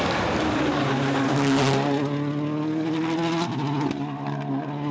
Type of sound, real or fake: real